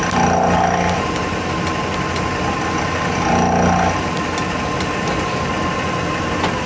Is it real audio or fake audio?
real